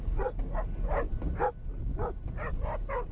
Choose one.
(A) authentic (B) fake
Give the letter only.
A